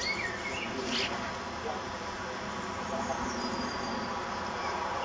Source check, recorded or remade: recorded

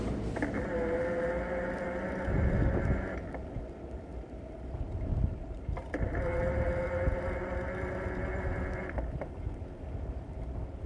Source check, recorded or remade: recorded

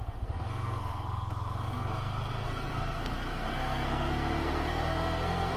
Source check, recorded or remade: remade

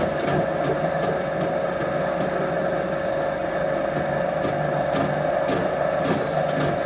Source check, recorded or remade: recorded